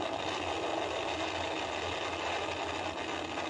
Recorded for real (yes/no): yes